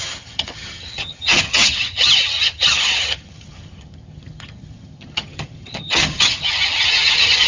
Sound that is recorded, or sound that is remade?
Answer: remade